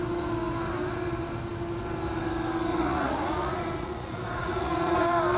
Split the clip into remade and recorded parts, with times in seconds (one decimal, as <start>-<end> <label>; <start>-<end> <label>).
0.0-2.7 recorded; 2.7-5.0 remade; 5.0-5.4 recorded